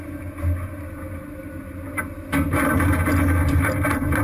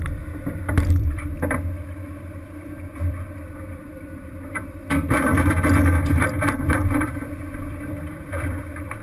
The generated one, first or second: second